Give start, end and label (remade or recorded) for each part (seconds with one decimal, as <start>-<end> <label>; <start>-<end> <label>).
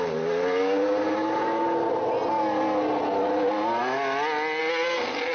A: 0.0-5.3 recorded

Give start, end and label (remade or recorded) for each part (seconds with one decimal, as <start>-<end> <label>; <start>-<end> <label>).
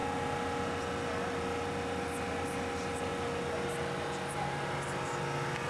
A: 0.0-5.7 recorded